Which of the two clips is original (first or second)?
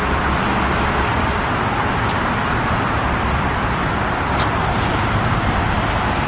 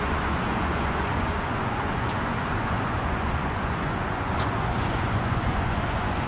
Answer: first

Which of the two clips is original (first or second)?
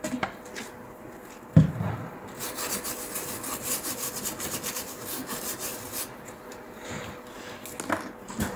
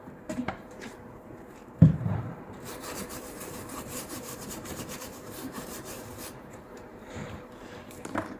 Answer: first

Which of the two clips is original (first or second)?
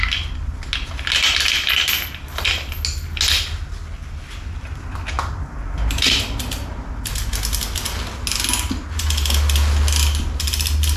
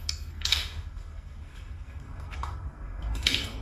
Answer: first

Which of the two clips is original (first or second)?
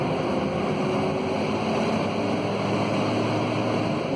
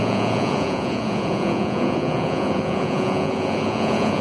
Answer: first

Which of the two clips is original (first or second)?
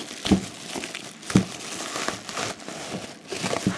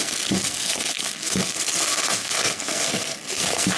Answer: first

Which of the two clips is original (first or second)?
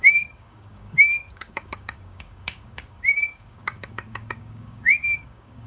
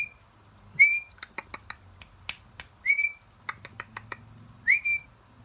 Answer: second